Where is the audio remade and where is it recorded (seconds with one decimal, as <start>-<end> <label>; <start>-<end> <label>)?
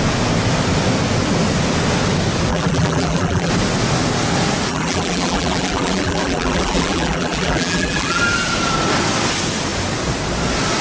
0.0-2.5 recorded; 2.5-3.5 remade; 3.5-4.7 recorded; 4.7-8.2 remade; 8.2-10.8 recorded